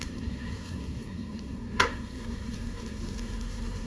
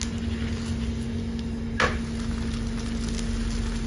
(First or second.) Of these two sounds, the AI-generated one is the first